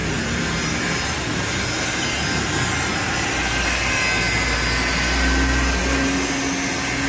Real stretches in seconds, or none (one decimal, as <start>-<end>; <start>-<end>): 0.0-7.1